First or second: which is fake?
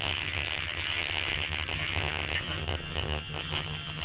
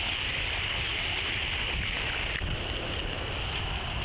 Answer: first